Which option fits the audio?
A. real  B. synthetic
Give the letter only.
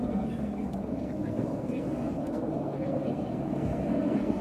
B